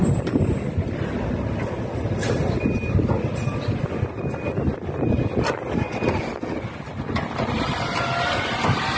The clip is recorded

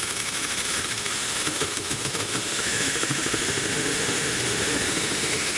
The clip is remade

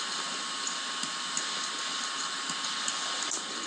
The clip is recorded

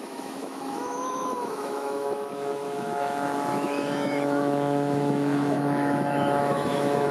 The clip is remade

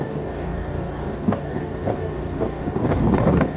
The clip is remade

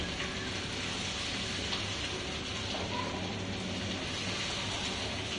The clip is recorded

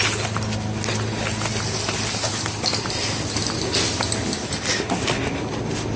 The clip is recorded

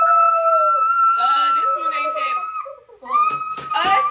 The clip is recorded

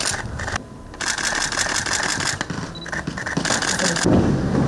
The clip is recorded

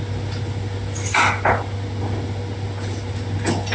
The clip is recorded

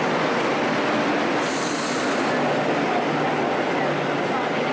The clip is recorded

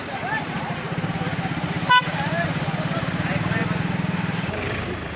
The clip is remade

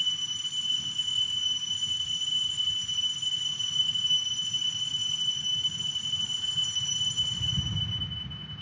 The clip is recorded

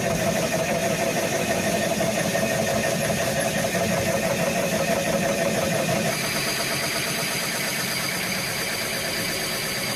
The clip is remade